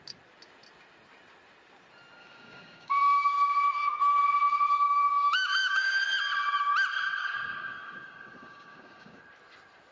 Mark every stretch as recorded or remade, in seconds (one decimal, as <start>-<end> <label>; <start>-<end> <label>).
0.0-2.2 recorded; 2.2-3.3 remade; 3.3-4.7 recorded; 4.7-5.9 remade; 5.9-7.2 recorded; 7.2-9.2 remade; 9.2-9.9 recorded